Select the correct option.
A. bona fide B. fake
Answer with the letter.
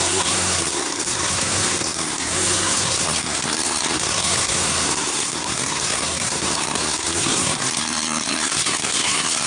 B